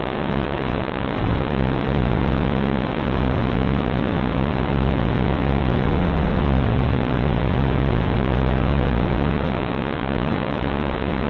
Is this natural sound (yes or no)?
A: no